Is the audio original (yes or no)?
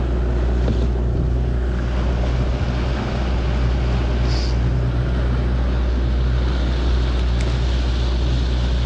yes